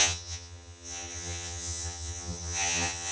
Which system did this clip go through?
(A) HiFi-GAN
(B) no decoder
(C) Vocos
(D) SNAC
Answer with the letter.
A